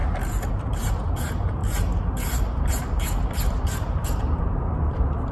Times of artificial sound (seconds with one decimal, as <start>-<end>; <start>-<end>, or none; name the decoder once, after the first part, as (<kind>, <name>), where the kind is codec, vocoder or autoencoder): 0.0-5.3 (vocoder, BigVGAN v2)